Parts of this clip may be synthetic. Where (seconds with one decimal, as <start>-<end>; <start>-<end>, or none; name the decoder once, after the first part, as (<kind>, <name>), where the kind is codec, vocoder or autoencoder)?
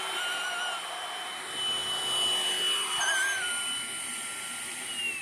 none